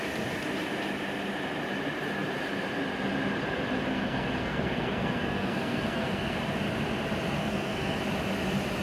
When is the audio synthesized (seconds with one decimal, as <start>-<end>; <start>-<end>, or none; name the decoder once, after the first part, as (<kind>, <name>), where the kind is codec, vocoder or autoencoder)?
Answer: 3.9-6.6 (codec, SNAC); 7.4-8.0